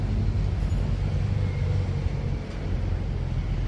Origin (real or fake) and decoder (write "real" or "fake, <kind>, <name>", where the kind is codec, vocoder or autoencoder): real